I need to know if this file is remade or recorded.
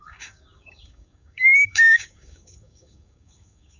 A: remade